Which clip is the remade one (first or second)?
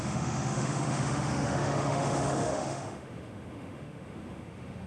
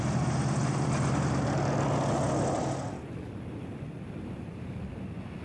first